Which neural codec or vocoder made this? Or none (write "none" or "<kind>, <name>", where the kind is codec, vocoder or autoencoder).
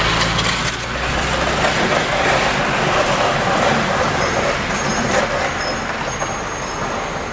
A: none